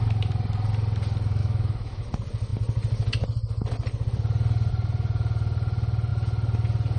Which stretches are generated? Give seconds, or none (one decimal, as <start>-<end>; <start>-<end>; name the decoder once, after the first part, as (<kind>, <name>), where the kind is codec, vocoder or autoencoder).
1.4-2.0 (autoencoder, DAC-VAE)